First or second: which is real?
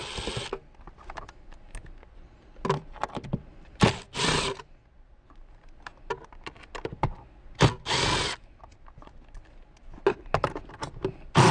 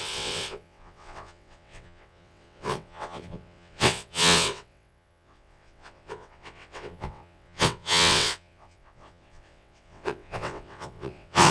first